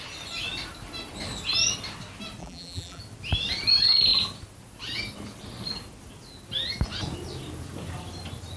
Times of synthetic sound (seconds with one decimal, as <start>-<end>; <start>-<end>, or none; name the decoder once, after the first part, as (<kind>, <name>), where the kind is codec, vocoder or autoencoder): 2.4-3.0 (vocoder, BigVGAN v2)